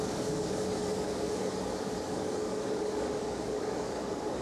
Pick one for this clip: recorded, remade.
remade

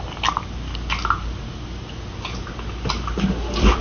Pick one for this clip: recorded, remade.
recorded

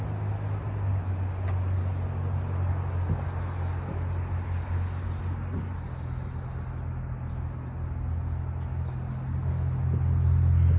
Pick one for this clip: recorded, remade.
recorded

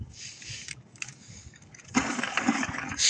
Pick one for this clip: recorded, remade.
remade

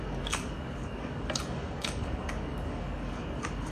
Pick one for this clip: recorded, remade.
remade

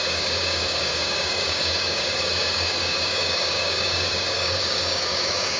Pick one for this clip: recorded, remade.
remade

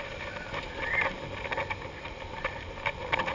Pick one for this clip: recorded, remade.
recorded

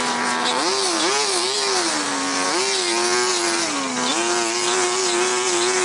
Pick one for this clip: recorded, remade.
recorded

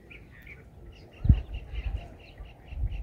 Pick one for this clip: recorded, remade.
recorded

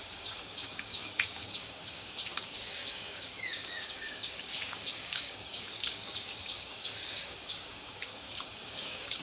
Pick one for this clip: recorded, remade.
remade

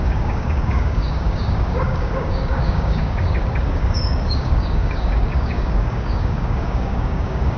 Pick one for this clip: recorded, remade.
remade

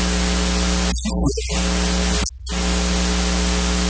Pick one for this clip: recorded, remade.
recorded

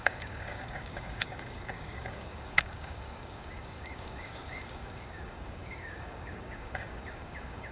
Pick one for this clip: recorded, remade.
remade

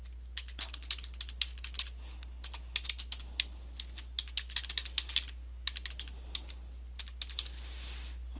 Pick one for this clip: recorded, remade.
recorded